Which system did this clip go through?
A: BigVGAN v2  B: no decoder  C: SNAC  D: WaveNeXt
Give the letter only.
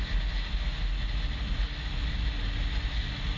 B